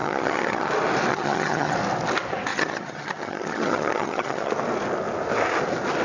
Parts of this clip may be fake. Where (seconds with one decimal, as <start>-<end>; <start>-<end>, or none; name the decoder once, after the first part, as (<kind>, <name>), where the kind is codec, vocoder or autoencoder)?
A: 0.0-0.7 (vocoder, HiFi-GAN); 1.1-1.7; 2.5-4.5